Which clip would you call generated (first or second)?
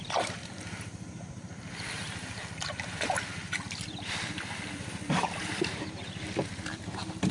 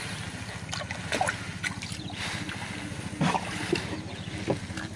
first